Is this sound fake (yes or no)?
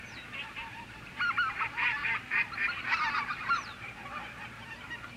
yes